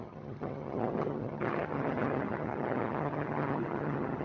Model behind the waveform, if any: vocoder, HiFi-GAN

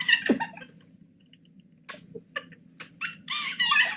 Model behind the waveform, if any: none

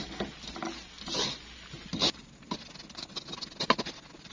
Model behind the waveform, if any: none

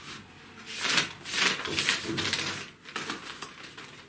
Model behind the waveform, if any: none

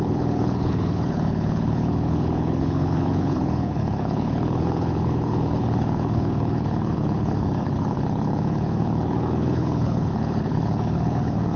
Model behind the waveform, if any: codec, HILCodec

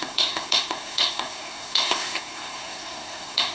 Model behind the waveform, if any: codec, SNAC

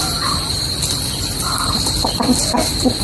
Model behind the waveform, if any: none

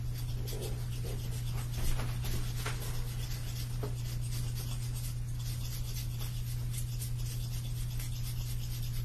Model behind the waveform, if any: none